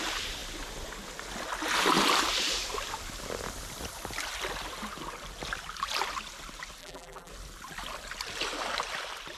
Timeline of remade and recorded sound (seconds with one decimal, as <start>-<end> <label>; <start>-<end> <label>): 0.0-6.8 recorded; 6.8-7.3 remade; 7.3-9.4 recorded